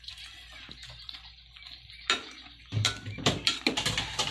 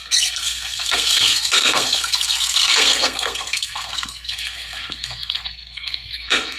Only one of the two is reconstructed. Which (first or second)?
second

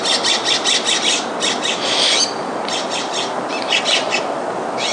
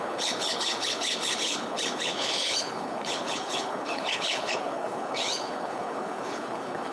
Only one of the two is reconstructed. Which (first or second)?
second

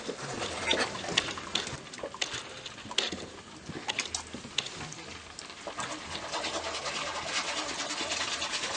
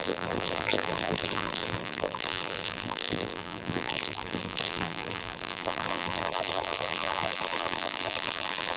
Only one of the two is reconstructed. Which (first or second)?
second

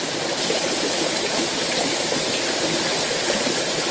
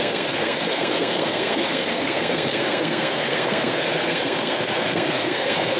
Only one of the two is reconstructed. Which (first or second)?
second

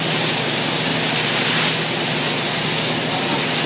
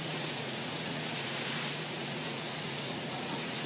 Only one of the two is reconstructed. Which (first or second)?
second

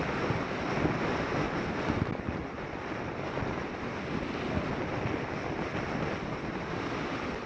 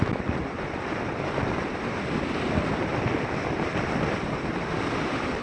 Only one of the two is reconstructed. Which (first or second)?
second